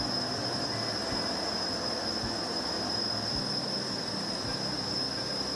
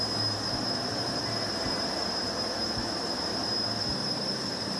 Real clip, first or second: first